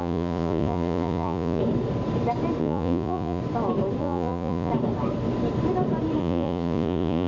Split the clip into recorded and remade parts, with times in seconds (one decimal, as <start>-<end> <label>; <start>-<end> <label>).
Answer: 0.0-1.6 remade; 1.6-2.6 recorded; 2.6-3.4 remade; 3.4-4.0 recorded; 4.0-4.7 remade; 4.7-6.2 recorded; 6.2-7.3 remade